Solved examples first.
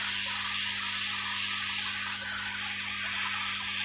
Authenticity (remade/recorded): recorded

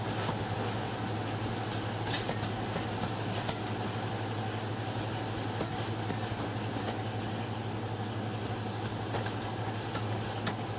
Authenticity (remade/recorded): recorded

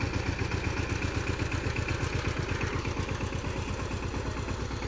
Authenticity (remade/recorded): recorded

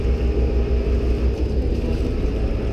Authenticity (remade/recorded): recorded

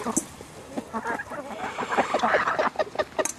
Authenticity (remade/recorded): recorded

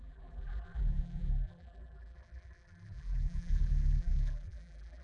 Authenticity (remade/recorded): remade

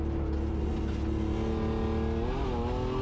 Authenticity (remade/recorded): recorded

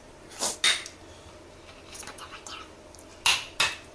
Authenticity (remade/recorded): recorded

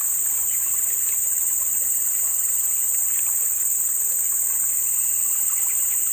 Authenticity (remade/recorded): recorded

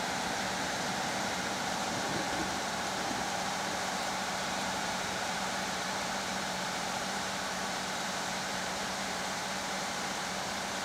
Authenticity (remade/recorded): remade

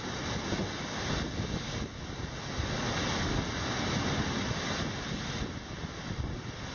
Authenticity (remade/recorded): recorded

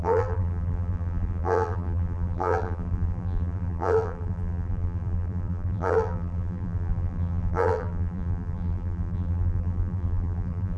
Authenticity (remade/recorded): remade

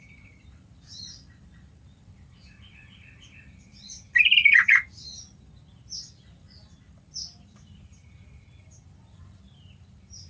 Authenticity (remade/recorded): remade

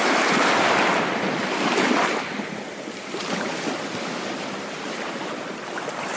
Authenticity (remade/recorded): remade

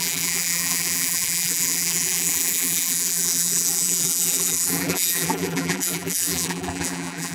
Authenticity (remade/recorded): remade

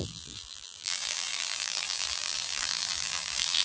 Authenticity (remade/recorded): remade